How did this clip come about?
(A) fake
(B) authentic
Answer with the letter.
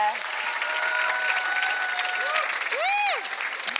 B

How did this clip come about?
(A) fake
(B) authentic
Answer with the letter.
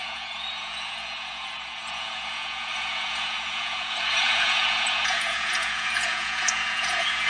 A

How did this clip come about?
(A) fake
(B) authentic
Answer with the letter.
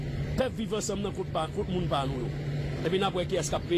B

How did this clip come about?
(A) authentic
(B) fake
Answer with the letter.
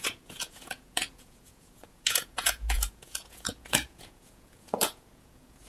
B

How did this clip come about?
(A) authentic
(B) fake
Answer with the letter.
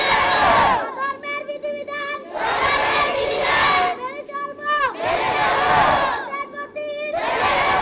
A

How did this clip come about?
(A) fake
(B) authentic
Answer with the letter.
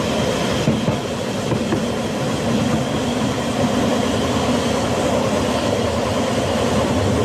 B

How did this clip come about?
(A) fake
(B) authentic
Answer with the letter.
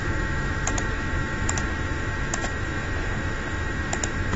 A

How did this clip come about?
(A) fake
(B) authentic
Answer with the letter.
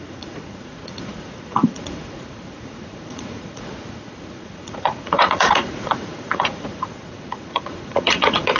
A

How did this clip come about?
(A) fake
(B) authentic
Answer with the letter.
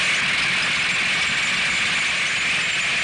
B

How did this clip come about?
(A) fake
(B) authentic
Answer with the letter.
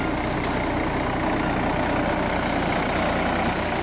B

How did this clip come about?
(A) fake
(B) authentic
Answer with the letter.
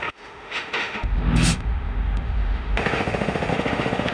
A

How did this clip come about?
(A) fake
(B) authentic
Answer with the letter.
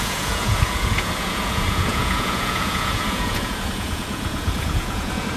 A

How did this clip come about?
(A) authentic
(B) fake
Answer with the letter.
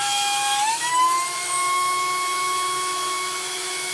B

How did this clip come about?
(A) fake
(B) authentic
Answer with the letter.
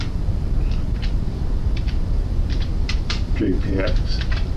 A